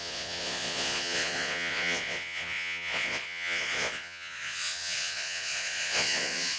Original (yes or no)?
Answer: no